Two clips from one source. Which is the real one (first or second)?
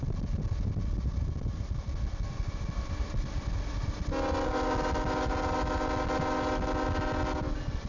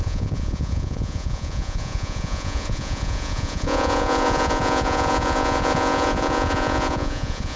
first